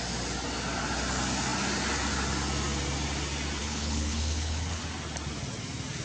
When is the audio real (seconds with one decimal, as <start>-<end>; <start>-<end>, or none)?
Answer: 0.0-3.6; 4.8-6.0